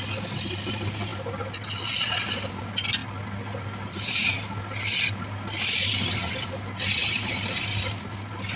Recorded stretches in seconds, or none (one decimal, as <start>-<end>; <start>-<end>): 0.0-7.0; 7.6-8.6